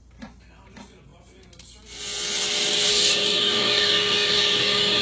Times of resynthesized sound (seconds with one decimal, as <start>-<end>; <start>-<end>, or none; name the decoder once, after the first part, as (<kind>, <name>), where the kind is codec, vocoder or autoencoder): 2.9-5.0 (codec, DAC)